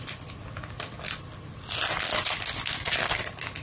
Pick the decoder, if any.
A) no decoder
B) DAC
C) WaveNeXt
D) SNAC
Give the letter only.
A